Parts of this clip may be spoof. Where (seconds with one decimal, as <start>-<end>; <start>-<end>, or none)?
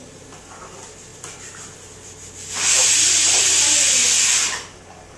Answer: none